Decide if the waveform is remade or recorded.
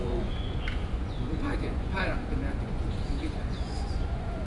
remade